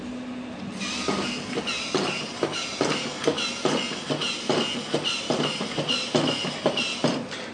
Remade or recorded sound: recorded